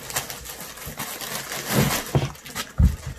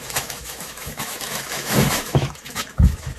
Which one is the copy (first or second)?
second